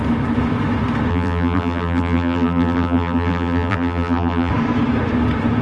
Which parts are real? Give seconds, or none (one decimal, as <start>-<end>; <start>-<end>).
0.0-1.1; 4.5-5.6